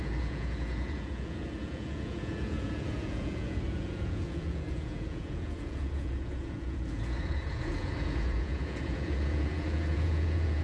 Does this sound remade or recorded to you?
remade